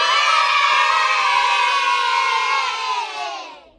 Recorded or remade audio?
recorded